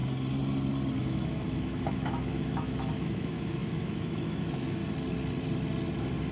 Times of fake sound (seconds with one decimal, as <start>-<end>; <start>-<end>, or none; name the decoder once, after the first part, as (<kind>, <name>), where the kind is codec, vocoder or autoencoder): 1.0-4.8 (autoencoder, DAC-VAE)